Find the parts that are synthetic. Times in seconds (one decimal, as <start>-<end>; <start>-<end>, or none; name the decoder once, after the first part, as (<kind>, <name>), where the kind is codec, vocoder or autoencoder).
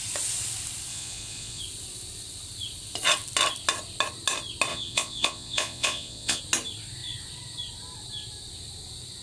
0.9-1.6 (vocoder, Vocos); 4.7-6.4